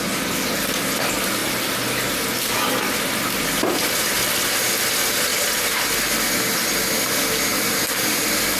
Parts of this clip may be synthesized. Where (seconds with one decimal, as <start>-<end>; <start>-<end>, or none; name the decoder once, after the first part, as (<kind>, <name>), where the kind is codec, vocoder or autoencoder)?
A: none